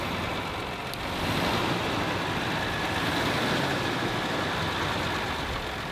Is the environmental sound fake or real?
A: real